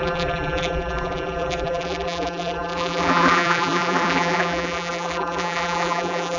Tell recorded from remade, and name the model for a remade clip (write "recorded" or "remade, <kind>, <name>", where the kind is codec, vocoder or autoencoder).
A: remade, vocoder, BigVGAN v2